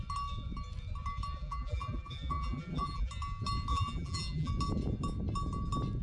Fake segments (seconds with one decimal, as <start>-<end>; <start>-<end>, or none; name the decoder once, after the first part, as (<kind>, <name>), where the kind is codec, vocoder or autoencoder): 1.4-3.1 (vocoder, BigVGAN v2); 3.7-4.5

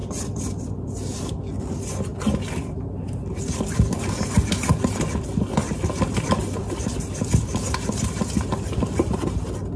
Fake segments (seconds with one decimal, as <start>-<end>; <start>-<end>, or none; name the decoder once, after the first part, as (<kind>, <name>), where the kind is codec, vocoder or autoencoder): 0.0-1.3 (vocoder, BigVGAN v2); 2.1-3.4

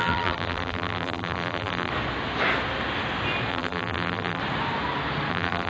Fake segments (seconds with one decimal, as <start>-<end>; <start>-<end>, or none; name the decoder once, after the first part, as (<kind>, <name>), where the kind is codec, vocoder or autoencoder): 0.0-1.9 (vocoder, BigVGAN v2); 3.5-4.4; 5.3-5.7

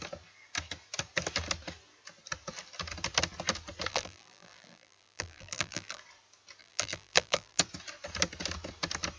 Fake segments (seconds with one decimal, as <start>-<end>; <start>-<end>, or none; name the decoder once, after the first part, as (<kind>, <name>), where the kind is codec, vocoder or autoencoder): 3.9-6.0 (vocoder, BigVGAN v2); 6.6-7.6

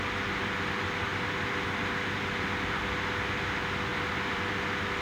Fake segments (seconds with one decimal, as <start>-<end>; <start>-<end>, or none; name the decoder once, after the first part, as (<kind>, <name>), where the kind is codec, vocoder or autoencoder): 3.9-4.5 (vocoder, BigVGAN v2)